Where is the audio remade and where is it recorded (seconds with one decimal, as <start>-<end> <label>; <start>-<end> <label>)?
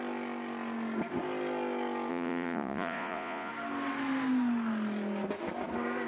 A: 0.0-2.1 recorded; 2.1-3.5 remade; 3.5-6.1 recorded